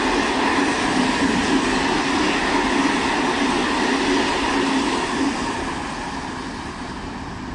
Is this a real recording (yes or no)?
yes